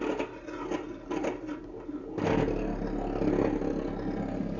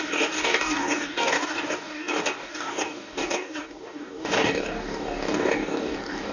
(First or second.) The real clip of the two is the first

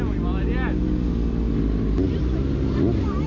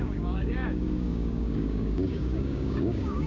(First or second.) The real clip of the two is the first